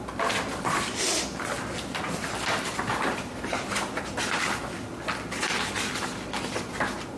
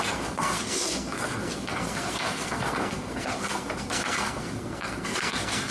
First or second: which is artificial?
second